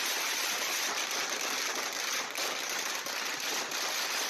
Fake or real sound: real